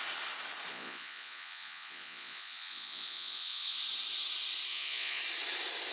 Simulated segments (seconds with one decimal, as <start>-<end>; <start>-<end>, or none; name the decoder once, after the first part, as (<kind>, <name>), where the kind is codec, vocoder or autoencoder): 0.7-3.8 (vocoder, Vocos); 4.7-5.2